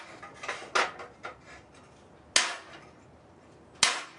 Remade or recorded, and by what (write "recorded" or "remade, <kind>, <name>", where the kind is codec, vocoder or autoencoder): recorded